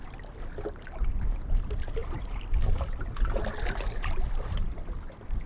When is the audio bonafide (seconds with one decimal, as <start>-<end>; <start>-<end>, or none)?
0.0-5.5